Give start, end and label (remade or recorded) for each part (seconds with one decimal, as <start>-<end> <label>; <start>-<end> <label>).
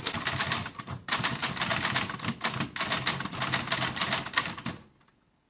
0.0-0.6 recorded; 0.6-1.8 remade; 1.8-5.5 recorded